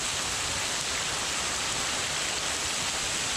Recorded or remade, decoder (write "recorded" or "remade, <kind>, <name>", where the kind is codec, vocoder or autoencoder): recorded